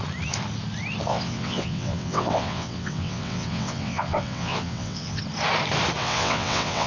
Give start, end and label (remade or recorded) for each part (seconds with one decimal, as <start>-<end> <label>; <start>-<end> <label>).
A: 0.0-1.1 recorded; 1.1-5.2 remade; 5.2-6.0 recorded; 6.0-6.9 remade